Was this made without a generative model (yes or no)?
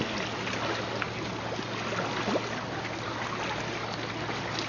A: yes